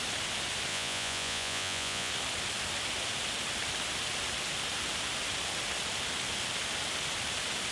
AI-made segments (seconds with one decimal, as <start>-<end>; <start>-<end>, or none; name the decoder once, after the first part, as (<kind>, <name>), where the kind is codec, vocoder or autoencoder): 0.7-2.1 (vocoder, Vocos)